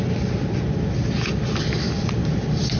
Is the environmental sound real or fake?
real